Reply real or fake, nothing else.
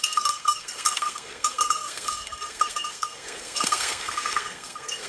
fake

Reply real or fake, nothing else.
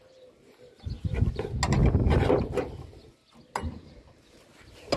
real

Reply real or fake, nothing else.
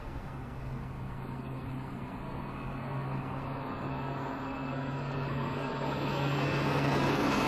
fake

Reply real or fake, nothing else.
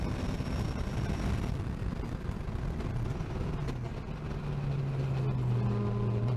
real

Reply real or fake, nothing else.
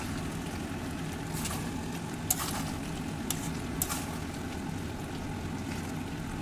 real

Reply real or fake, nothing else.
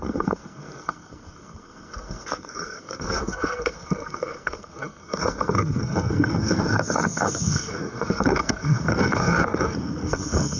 fake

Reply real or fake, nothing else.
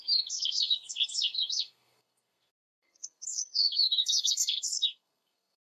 fake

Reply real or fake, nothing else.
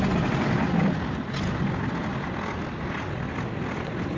real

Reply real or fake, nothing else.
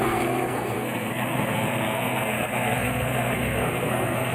fake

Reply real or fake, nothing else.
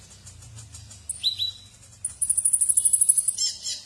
real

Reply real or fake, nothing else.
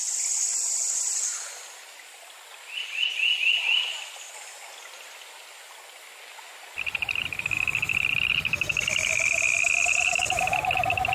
real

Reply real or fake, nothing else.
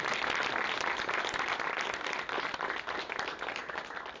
real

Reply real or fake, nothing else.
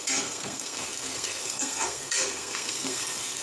fake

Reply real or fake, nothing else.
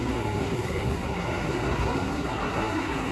fake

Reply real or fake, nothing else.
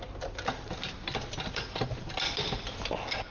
real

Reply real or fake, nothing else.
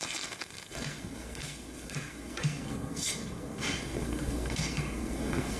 fake